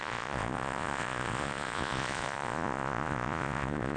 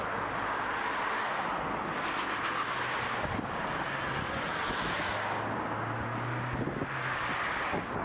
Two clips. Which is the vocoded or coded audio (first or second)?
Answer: first